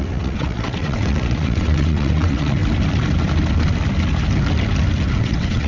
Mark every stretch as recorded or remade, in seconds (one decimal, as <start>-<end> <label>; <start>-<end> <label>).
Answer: 0.0-2.6 remade; 2.6-5.2 recorded; 5.2-5.7 remade

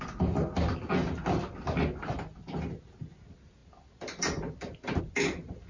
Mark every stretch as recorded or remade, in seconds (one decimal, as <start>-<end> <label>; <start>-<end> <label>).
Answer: 0.0-5.7 recorded

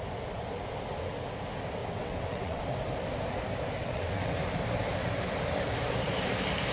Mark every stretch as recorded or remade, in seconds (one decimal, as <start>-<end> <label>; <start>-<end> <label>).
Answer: 0.0-1.8 recorded; 1.8-2.6 remade; 2.6-3.8 recorded; 3.8-4.4 remade; 4.4-6.7 recorded

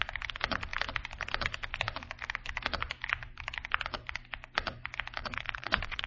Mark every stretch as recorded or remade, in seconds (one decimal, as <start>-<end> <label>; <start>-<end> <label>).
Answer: 0.0-5.2 recorded; 5.2-6.1 remade

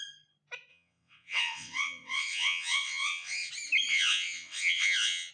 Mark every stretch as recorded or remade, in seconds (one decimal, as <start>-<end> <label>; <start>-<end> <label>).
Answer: 0.0-0.7 recorded; 0.7-3.5 remade; 3.5-3.9 recorded; 3.9-5.3 remade

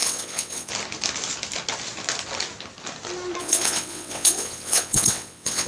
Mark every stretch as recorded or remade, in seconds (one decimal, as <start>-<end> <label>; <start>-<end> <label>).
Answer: 0.0-0.7 remade; 0.7-3.4 recorded; 3.4-5.7 remade

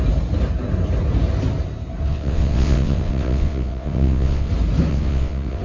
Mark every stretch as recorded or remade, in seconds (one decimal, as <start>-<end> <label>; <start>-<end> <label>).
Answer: 0.0-2.1 recorded; 2.1-4.5 remade; 4.5-4.9 recorded; 4.9-5.6 remade

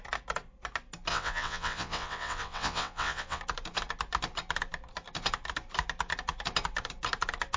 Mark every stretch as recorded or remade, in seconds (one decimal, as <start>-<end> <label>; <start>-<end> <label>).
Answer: 0.0-1.1 recorded; 1.1-3.4 remade; 3.4-7.6 recorded